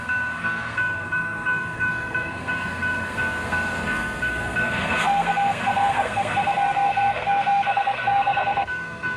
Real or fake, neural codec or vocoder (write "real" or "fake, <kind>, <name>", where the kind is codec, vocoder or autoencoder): fake, codec, SNAC